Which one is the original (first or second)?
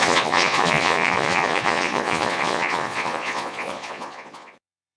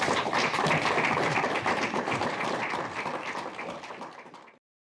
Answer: second